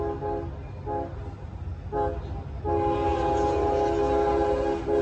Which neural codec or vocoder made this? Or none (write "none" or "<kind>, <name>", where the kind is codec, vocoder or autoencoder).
none